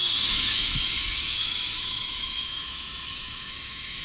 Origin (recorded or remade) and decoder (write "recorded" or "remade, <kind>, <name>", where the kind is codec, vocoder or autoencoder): remade, autoencoder, DAC-VAE